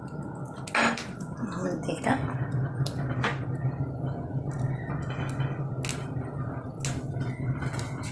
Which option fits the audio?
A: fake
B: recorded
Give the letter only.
B